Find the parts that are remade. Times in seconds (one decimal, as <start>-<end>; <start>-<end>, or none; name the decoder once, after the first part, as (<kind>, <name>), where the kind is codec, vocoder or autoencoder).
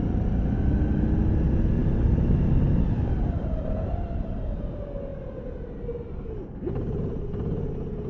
none